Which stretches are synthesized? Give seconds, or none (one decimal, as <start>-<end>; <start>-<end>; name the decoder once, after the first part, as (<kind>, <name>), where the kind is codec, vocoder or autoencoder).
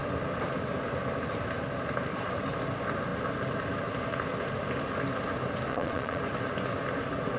5.7-6.2 (vocoder, Vocos)